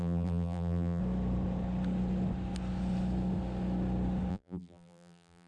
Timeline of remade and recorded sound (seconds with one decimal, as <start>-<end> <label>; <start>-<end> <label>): 0.0-1.0 remade; 1.0-4.3 recorded; 4.3-5.5 remade